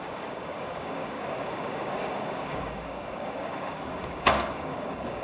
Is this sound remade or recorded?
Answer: remade